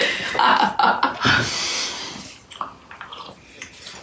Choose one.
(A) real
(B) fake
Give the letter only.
A